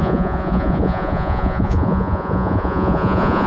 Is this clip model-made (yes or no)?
yes